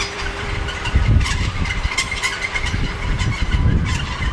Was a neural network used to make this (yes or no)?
yes